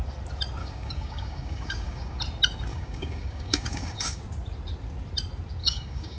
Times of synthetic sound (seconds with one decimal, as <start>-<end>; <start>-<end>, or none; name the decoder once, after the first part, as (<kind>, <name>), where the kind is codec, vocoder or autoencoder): 0.6-2.2 (codec, DAC); 2.7-4.2; 5.6-6.2